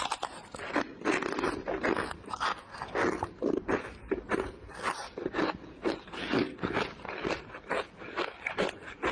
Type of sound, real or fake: real